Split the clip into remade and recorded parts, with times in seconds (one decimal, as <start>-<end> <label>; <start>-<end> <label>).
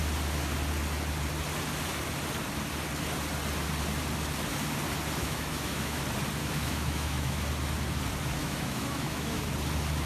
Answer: 0.0-5.2 recorded; 5.2-6.0 remade; 6.0-6.4 recorded; 6.4-7.4 remade; 7.4-8.4 recorded; 8.4-9.5 remade; 9.5-10.1 recorded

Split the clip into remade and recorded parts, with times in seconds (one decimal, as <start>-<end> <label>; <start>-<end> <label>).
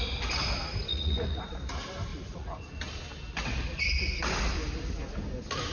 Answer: 0.0-0.9 recorded; 0.9-1.4 remade; 1.4-2.1 recorded; 2.1-2.8 remade; 2.8-5.7 recorded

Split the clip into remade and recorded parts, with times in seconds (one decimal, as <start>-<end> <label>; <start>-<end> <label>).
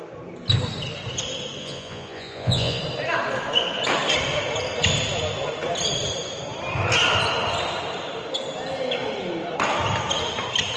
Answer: 0.0-1.6 recorded; 1.6-2.8 remade; 2.8-10.8 recorded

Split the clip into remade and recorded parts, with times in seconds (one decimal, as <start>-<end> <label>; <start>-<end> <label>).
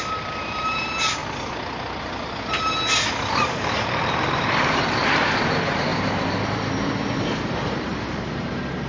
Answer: 0.0-1.2 remade; 1.2-3.3 recorded; 3.3-8.9 remade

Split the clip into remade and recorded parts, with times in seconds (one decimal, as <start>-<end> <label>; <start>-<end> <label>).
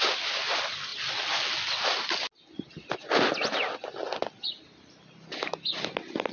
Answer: 0.0-6.3 recorded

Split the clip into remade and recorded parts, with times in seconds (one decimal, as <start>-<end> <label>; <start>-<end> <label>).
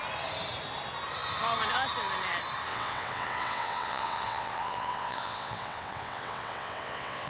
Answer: 0.0-2.7 recorded; 2.7-7.3 remade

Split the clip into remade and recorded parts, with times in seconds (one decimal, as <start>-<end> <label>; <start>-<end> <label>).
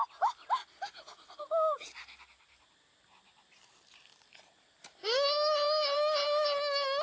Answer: 0.0-7.0 recorded